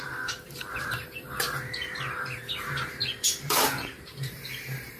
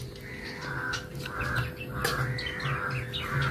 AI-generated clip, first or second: first